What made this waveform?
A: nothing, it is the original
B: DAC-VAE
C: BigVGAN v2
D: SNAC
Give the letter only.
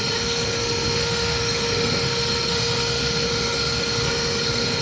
D